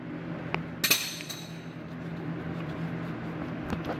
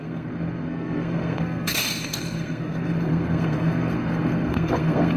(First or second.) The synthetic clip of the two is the second